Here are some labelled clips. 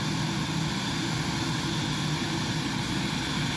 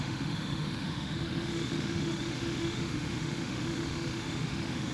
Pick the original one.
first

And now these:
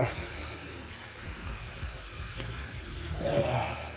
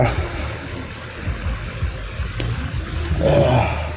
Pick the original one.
second